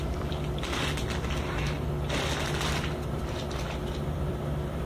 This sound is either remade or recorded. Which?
remade